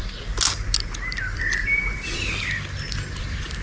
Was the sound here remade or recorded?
recorded